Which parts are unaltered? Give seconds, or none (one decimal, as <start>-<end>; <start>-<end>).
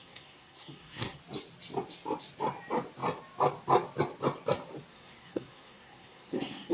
1.2-4.9